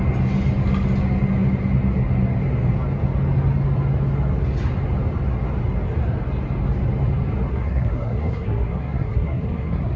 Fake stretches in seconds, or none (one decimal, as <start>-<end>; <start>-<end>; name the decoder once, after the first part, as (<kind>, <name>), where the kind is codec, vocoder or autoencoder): 7.5-10.0 (codec, SNAC)